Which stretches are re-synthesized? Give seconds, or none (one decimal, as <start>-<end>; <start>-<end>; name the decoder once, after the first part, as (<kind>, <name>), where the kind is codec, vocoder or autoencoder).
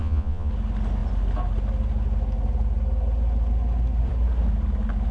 0.0-0.5 (vocoder, Vocos)